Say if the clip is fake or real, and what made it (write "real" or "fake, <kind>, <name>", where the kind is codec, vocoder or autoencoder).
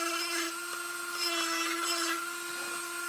real